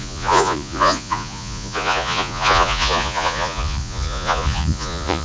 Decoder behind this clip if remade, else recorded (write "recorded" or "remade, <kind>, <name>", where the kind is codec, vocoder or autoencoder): remade, vocoder, Vocos